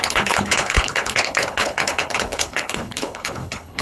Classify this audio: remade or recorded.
remade